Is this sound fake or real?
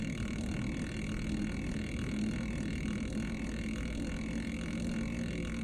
real